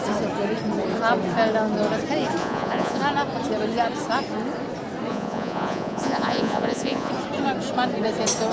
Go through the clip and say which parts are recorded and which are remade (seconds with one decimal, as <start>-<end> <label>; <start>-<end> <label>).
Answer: 0.0-2.4 recorded; 2.4-3.0 remade; 3.0-5.1 recorded; 5.1-7.1 remade; 7.1-8.5 recorded